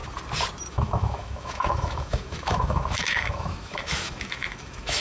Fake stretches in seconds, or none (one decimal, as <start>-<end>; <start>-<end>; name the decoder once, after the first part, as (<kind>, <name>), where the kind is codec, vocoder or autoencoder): 0.7-5.0 (autoencoder, DAC-VAE)